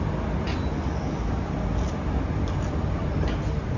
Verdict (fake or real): real